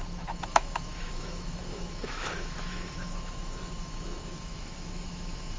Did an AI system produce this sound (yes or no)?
yes